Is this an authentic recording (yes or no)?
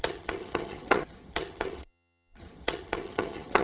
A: no